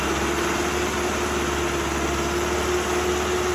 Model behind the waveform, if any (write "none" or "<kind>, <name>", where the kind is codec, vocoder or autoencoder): none